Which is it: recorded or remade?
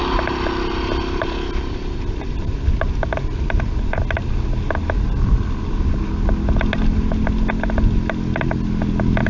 recorded